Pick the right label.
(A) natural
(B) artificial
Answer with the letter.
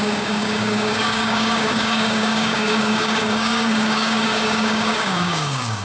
B